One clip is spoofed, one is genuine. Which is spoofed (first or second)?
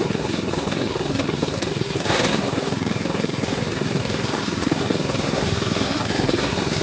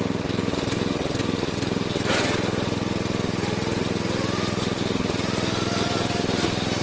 first